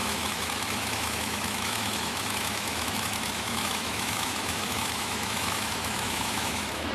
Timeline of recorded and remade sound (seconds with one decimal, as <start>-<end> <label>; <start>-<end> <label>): 0.0-6.9 remade